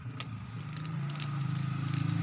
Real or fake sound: real